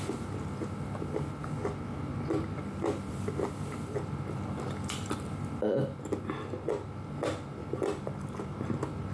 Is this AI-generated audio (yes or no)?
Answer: no